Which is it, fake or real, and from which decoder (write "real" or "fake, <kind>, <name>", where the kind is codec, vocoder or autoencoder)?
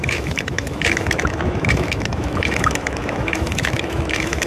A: fake, autoencoder, DAC-VAE